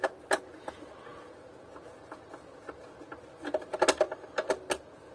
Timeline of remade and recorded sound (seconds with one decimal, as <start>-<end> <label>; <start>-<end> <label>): 0.0-5.1 recorded

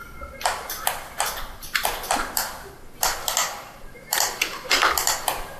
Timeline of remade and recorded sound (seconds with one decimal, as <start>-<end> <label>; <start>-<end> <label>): 0.0-3.4 recorded; 3.4-4.2 remade; 4.2-5.6 recorded